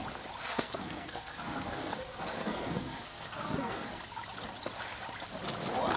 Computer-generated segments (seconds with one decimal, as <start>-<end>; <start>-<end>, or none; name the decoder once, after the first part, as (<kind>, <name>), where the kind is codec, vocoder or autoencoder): 0.4-4.0 (codec, SNAC)